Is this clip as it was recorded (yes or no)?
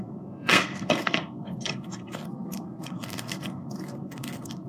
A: no